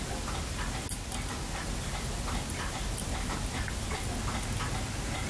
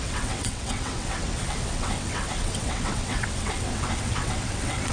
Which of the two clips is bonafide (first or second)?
first